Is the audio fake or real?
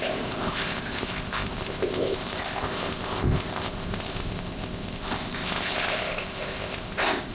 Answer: fake